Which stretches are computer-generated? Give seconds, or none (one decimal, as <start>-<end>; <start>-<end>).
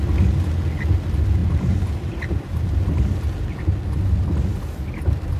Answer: 1.4-2.8